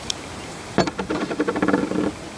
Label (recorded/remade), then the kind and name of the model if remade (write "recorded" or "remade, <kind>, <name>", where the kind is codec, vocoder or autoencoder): recorded